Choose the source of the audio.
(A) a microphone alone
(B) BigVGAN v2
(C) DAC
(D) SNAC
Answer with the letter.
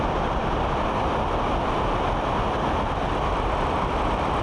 A